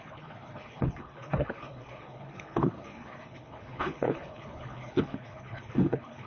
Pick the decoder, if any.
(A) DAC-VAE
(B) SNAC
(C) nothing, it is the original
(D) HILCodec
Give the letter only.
D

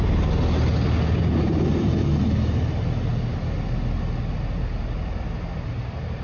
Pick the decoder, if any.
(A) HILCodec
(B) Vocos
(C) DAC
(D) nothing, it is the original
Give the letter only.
D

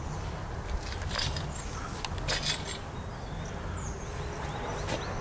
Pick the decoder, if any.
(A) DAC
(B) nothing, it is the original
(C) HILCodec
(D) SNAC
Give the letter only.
B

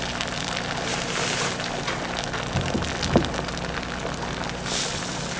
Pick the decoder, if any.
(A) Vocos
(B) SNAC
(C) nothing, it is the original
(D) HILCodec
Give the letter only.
C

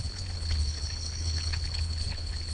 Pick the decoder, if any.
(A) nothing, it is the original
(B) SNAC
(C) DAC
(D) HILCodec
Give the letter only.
D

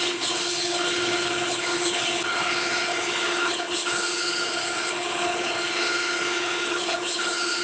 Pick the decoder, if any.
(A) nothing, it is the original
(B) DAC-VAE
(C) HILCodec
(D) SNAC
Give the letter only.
C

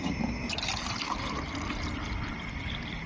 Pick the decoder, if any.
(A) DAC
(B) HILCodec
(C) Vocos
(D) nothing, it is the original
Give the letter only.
D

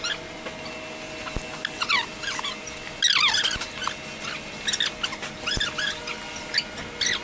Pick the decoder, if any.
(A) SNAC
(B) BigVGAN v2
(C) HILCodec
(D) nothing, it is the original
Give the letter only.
D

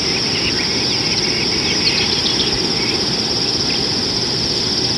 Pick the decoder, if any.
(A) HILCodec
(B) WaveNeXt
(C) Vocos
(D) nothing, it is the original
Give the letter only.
D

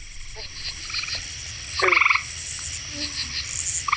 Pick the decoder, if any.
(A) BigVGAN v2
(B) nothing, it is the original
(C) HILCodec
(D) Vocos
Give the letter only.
B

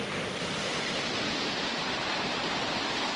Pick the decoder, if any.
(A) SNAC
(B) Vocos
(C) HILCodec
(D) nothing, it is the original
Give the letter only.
D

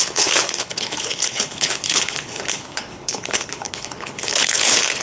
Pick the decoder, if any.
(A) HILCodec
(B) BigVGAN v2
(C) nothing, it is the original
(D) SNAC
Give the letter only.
A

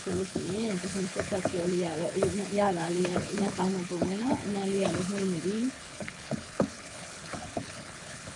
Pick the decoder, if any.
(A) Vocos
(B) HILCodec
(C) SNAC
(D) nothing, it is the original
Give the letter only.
B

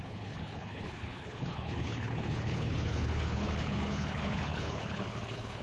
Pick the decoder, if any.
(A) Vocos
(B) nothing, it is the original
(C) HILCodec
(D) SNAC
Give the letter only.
C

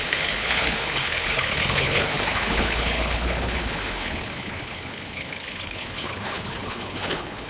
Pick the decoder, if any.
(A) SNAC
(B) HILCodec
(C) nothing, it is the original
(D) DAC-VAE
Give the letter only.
B